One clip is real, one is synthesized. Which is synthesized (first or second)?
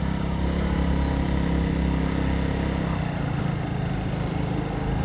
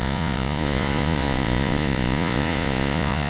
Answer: second